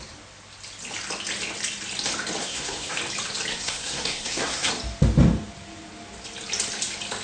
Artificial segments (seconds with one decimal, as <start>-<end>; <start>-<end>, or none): 2.4-3.0; 3.5-4.7